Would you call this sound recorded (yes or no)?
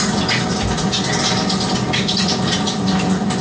yes